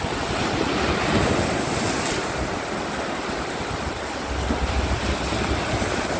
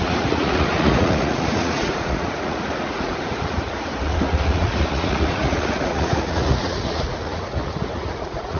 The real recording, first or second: first